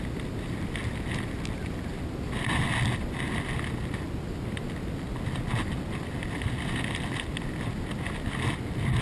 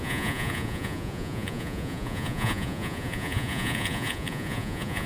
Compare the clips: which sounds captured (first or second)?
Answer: first